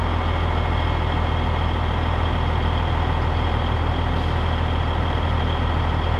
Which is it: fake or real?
real